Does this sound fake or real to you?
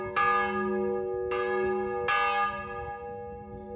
real